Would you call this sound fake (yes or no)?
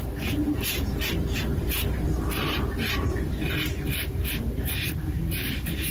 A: yes